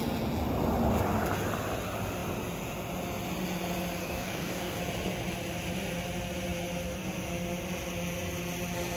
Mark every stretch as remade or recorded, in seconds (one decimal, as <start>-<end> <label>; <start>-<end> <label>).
0.0-4.0 recorded; 4.0-4.8 remade; 4.8-9.0 recorded

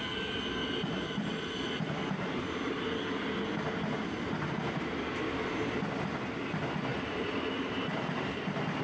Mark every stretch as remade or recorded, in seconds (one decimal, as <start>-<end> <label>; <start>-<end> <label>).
0.0-6.9 recorded; 6.9-8.4 remade; 8.4-8.8 recorded

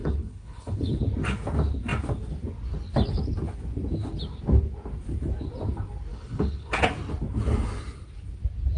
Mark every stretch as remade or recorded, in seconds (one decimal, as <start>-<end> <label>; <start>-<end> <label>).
0.0-1.0 remade; 1.0-6.1 recorded; 6.1-6.9 remade; 6.9-8.8 recorded

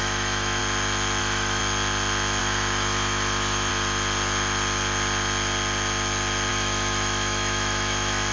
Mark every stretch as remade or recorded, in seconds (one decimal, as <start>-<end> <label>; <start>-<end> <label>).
0.0-0.6 remade; 0.6-1.2 recorded; 1.2-1.6 remade; 1.6-2.4 recorded; 2.4-3.7 remade; 3.7-6.5 recorded; 6.5-8.3 remade